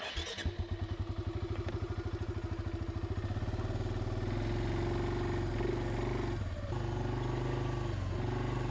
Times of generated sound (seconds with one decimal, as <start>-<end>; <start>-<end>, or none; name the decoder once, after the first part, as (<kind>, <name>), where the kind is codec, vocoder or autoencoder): none